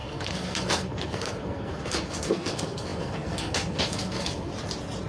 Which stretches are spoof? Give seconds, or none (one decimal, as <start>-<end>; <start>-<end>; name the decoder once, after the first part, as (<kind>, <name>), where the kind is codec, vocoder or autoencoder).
0.0-4.5 (codec, SNAC)